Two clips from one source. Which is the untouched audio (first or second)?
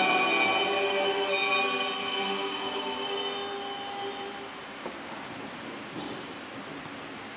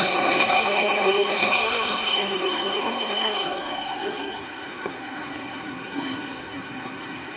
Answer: first